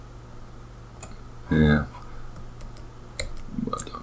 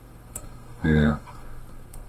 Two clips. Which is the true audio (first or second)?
first